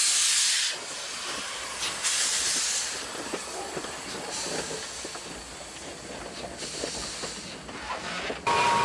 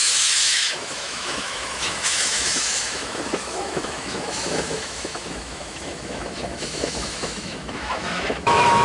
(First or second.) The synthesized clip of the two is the second